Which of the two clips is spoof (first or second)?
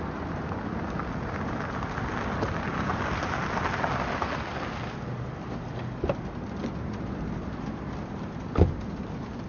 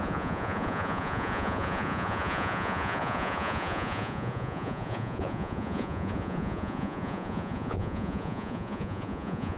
second